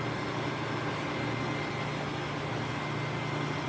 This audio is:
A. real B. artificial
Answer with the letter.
A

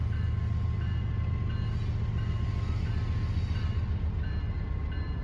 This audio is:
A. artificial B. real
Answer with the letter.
B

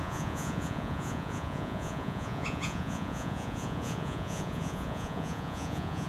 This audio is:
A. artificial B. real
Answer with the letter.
A